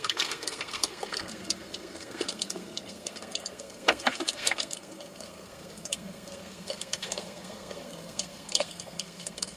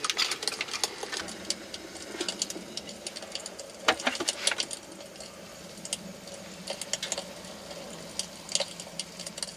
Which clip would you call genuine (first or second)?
second